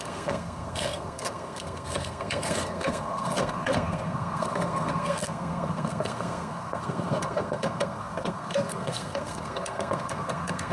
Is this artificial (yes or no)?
yes